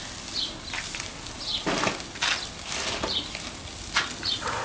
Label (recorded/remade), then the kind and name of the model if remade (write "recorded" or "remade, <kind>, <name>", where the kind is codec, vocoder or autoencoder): recorded